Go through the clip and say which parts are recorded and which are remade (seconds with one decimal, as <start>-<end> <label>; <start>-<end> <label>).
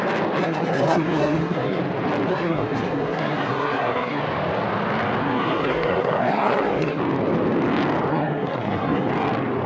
0.0-0.4 recorded; 0.4-1.8 remade; 1.8-2.3 recorded; 2.3-4.2 remade; 4.2-5.2 recorded; 5.2-7.0 remade; 7.0-8.1 recorded; 8.1-9.1 remade; 9.1-9.7 recorded